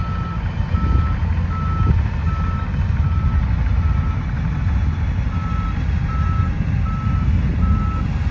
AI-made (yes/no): no